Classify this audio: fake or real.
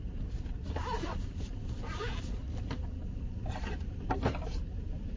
real